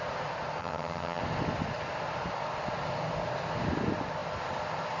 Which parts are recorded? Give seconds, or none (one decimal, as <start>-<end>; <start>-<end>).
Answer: 0.0-0.6; 1.2-5.0